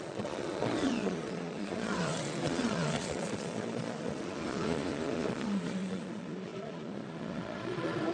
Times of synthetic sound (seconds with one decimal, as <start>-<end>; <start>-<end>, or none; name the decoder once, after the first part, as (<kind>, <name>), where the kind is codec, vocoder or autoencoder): 0.0-8.1 (vocoder, Vocos)